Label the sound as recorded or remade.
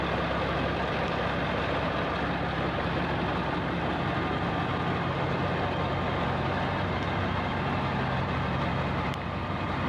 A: recorded